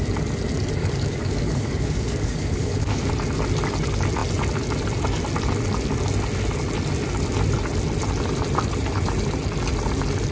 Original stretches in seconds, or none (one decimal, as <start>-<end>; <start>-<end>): 0.0-0.8; 3.1-10.3